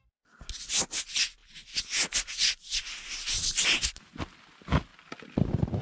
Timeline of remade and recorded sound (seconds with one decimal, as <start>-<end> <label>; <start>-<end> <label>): 0.0-5.8 recorded